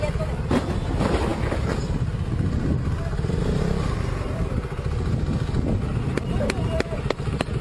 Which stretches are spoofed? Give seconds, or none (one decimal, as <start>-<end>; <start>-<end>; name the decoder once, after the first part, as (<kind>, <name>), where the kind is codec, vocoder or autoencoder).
3.1-3.6 (vocoder, BigVGAN v2)